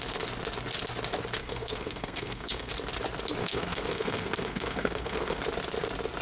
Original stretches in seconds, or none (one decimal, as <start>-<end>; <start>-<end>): 0.0-1.4; 2.7-3.4; 5.4-6.2